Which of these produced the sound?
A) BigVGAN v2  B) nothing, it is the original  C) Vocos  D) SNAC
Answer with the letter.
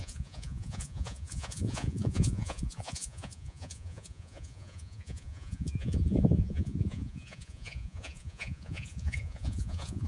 C